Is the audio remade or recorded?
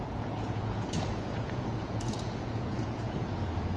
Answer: remade